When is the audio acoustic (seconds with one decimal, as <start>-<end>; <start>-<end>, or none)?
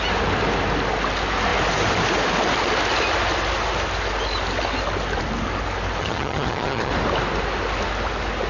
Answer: 0.0-6.0; 6.9-8.5